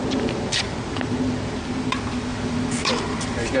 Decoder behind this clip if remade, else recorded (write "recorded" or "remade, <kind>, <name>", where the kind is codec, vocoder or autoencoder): remade, vocoder, BigVGAN v2